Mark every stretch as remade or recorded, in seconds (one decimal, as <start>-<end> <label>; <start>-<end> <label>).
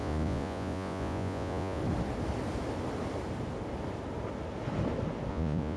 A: 0.0-1.8 remade; 1.8-5.3 recorded; 5.3-5.8 remade